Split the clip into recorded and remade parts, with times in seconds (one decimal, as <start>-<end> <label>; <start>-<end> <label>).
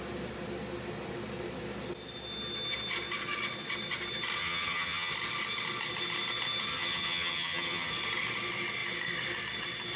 0.0-4.4 recorded; 4.4-5.1 remade; 5.1-6.7 recorded; 6.7-7.9 remade; 7.9-10.0 recorded